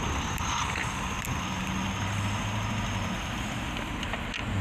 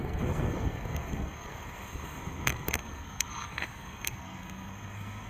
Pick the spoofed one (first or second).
second